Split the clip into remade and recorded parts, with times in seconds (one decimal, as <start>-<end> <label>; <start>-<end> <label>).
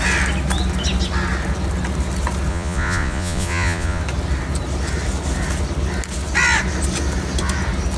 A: 0.0-2.5 recorded; 2.5-4.0 remade; 4.0-8.0 recorded